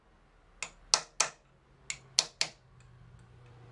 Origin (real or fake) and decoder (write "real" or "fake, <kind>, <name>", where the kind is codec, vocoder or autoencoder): real